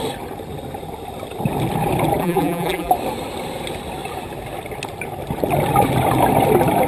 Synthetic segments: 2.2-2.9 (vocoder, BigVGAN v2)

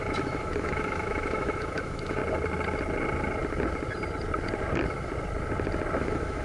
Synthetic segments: 0.0-2.2 (autoencoder, DAC-VAE); 6.0-6.4

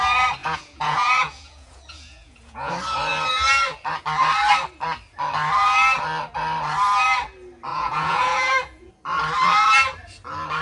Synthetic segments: 0.4-2.7 (vocoder, Vocos); 7.7-8.9

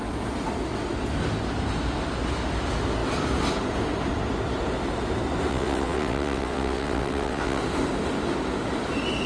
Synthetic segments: 5.5-7.6 (vocoder, WaveNeXt)

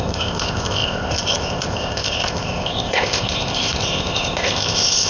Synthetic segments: 0.0-5.1 (codec, ZipCodec)

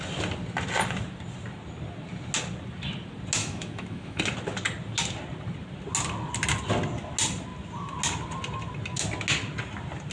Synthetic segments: 3.4-4.2 (autoencoder, DAC-VAE)